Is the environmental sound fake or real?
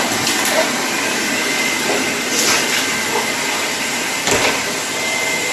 real